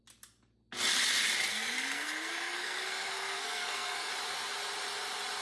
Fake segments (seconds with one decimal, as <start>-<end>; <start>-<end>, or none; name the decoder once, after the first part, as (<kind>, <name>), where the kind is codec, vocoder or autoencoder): 1.5-4.1 (codec, SNAC)